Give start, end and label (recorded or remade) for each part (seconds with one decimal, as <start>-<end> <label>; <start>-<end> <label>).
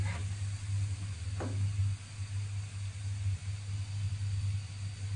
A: 0.0-5.2 recorded